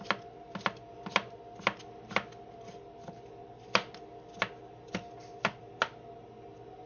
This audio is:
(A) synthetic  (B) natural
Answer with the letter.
B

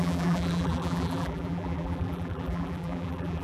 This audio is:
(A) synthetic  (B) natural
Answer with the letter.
A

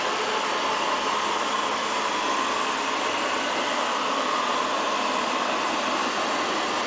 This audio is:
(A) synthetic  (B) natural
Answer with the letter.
B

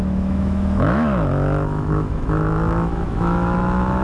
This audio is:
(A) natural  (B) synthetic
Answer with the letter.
B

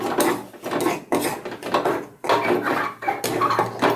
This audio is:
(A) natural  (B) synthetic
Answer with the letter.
A